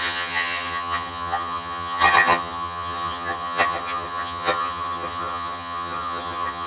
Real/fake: fake